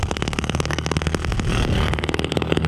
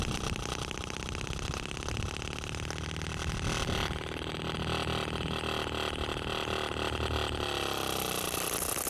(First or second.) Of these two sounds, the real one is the second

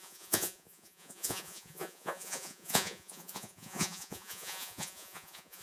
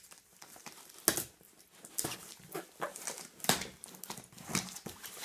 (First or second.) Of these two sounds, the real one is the second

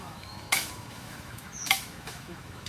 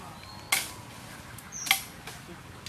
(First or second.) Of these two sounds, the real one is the second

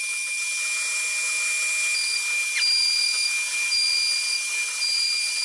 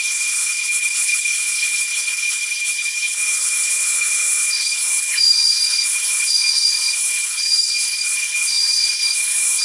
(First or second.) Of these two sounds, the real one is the first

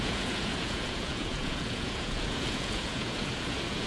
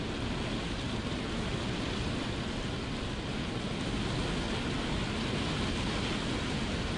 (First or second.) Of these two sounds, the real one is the second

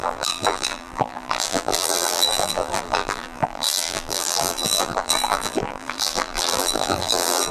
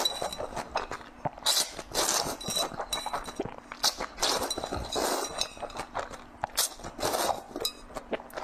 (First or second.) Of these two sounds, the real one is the second